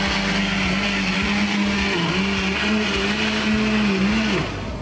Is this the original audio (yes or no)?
yes